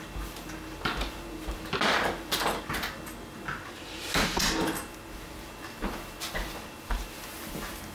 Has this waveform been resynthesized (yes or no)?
no